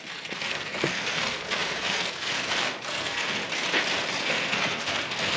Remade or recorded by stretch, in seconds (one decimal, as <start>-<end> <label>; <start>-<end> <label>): 0.0-3.4 remade; 3.4-4.2 recorded; 4.2-5.4 remade